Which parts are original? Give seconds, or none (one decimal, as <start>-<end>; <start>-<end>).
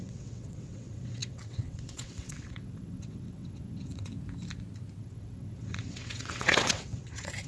4.1-5.0